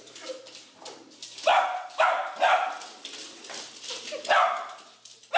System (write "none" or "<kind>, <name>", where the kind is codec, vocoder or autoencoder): none